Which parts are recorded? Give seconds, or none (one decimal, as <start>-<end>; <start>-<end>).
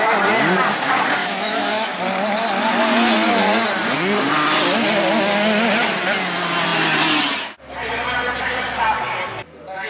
0.0-1.2; 2.0-9.9